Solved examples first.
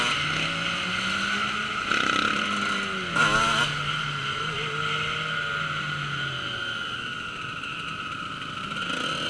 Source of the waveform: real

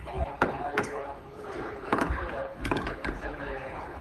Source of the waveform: fake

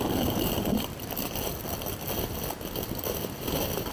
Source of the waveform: real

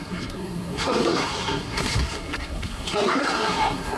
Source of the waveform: fake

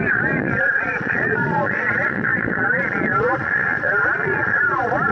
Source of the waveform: fake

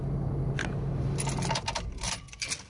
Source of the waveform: real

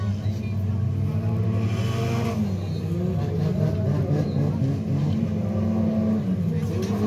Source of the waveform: real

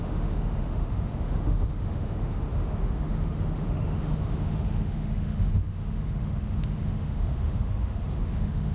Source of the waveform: fake